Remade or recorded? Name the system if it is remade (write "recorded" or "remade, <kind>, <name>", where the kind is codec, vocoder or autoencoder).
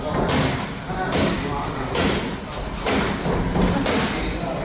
recorded